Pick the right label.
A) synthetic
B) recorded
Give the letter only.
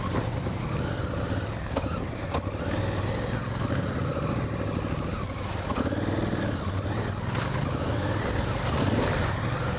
B